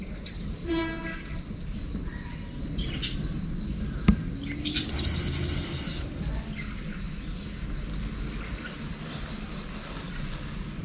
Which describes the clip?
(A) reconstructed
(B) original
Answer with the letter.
B